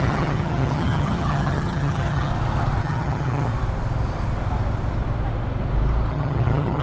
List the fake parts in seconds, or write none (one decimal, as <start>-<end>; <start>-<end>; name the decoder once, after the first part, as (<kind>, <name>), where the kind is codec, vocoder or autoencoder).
0.0-2.3 (vocoder, HiFi-GAN); 2.8-3.5; 6.1-6.8